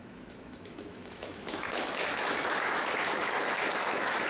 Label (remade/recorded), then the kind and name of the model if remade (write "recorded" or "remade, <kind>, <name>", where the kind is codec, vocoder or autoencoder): remade, autoencoder, DAC-VAE